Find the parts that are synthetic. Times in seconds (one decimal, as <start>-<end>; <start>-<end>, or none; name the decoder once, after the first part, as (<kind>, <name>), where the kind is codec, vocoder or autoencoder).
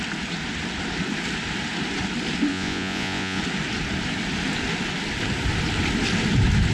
2.5-3.4 (vocoder, Vocos)